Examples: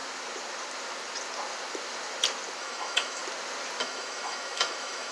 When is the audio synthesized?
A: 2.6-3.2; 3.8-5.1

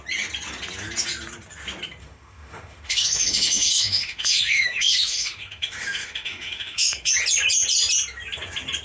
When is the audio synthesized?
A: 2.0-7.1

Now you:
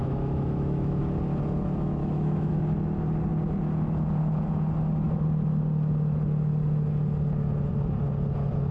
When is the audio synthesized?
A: 0.0-1.0; 2.0-2.6

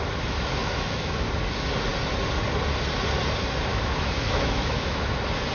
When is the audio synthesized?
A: 0.6-1.3; 3.7-5.1

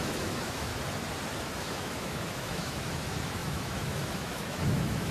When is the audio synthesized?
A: 0.0-0.7; 1.6-5.1